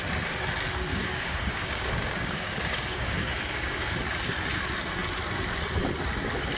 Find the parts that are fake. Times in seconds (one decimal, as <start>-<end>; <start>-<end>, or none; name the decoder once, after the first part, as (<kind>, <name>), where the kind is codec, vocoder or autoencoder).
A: 0.9-3.9 (codec, DAC)